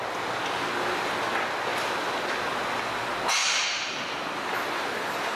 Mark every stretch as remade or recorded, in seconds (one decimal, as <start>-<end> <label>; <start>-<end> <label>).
0.0-1.7 recorded; 1.7-2.3 remade; 2.3-3.4 recorded; 3.4-4.4 remade; 4.4-5.3 recorded